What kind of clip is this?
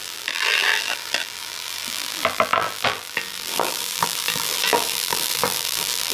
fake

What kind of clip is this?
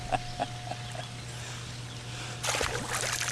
real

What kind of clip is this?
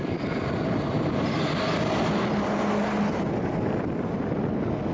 real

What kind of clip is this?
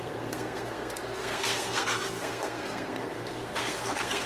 fake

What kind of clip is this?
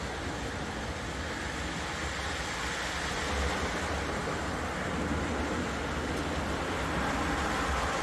real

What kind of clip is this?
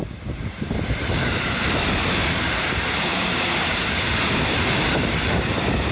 fake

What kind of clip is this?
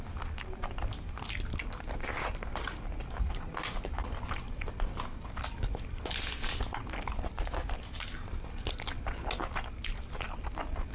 real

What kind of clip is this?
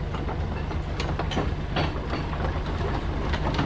real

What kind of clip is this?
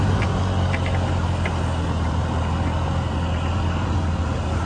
real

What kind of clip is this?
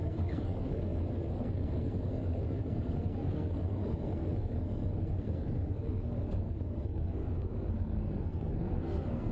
fake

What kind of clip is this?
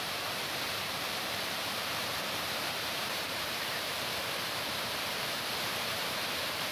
fake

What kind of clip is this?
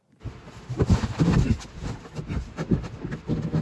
real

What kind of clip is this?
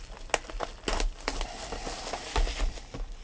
real